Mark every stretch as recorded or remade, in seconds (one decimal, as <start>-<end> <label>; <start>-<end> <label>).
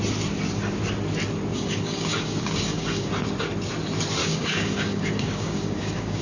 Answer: 0.0-1.5 recorded; 1.5-3.1 remade; 3.1-4.2 recorded; 4.2-6.2 remade